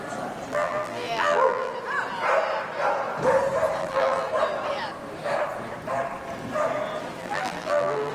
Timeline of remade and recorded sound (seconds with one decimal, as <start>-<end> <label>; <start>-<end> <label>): 0.0-0.5 recorded; 0.5-1.7 remade; 1.7-3.8 recorded; 3.8-4.3 remade; 4.3-7.2 recorded; 7.2-8.1 remade